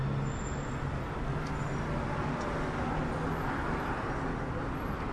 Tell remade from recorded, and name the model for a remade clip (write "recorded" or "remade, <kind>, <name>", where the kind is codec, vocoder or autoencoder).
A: recorded